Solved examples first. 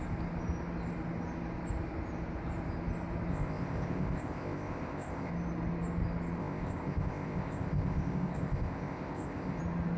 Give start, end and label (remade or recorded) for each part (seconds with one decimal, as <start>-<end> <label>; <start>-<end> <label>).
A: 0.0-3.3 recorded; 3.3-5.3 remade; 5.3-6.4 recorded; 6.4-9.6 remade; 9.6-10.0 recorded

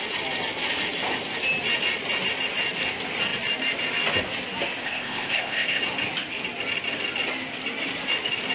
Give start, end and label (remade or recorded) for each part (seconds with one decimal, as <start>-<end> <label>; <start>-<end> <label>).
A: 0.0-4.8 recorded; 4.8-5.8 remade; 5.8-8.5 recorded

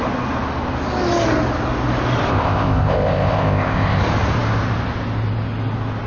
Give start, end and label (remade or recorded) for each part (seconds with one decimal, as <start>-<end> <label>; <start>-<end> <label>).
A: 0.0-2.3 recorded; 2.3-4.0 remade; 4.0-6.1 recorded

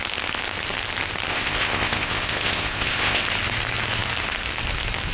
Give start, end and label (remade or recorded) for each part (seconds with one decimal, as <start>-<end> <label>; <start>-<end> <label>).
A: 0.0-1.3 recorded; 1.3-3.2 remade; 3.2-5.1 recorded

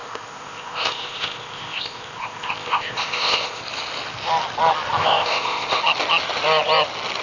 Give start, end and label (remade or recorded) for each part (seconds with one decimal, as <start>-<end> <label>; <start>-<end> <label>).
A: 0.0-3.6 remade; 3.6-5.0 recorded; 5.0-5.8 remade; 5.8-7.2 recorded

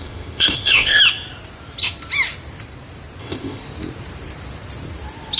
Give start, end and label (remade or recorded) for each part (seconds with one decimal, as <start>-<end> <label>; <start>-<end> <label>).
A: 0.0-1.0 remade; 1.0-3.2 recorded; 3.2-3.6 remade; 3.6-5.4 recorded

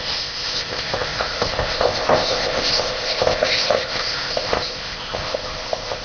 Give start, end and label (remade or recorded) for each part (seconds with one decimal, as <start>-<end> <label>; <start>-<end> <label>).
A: 0.0-6.0 remade